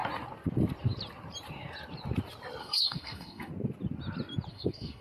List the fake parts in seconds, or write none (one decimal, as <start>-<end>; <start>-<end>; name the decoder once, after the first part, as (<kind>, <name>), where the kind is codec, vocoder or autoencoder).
2.6-3.5 (codec, SNAC); 4.5-5.0